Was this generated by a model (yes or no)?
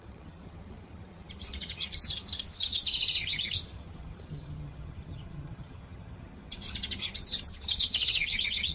yes